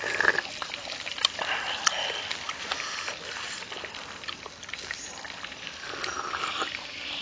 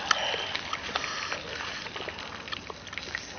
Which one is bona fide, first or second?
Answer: second